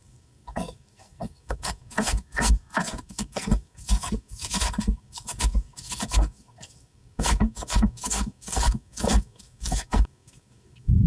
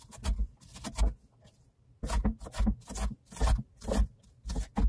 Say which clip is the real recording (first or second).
second